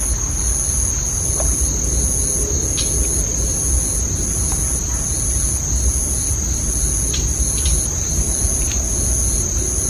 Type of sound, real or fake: real